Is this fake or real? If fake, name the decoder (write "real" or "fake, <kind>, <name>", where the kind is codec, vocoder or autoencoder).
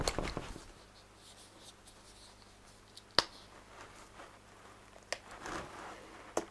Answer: real